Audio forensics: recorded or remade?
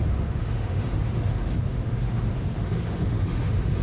remade